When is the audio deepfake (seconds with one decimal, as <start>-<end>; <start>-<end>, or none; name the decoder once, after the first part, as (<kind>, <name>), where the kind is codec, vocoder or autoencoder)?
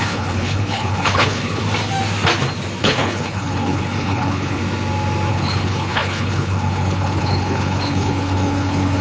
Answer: 0.0-1.6 (codec, HILCodec); 2.8-4.6; 5.3-9.0